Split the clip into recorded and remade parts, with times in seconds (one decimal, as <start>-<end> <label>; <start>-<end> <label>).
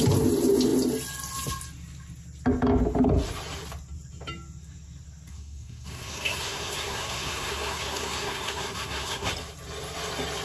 0.0-5.3 recorded; 5.3-9.3 remade; 9.3-10.4 recorded